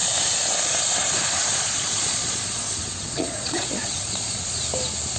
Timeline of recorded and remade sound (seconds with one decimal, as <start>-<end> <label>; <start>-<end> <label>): 0.0-1.5 recorded; 1.5-4.6 remade; 4.6-5.2 recorded